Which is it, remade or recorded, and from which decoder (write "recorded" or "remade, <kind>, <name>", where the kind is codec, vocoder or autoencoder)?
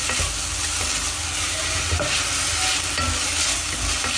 recorded